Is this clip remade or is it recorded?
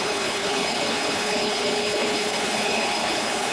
remade